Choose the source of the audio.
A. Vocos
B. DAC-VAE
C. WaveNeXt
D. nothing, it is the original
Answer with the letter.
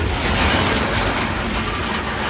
D